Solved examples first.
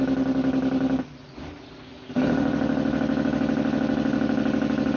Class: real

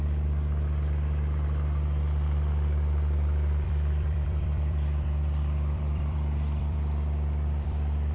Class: fake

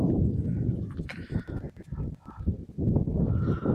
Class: real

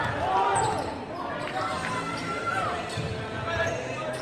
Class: fake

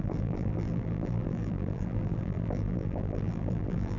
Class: fake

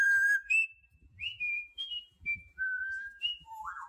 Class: fake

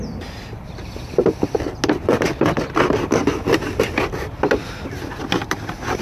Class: real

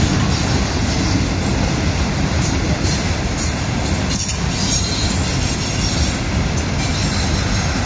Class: real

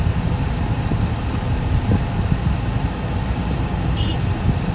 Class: real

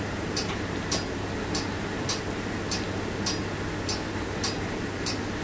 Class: real